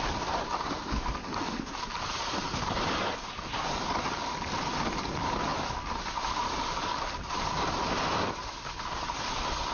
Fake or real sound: real